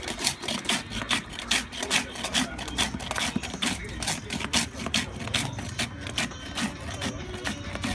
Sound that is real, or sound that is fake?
real